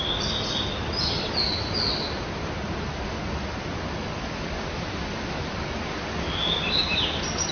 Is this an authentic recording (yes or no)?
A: yes